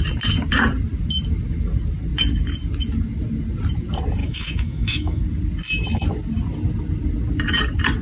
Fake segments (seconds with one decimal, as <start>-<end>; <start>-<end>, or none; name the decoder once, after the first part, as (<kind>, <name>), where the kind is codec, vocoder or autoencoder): 4.2-5.2 (autoencoder, DAC-VAE)